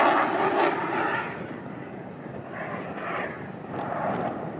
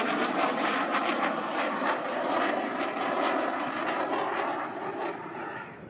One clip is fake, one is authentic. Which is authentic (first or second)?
first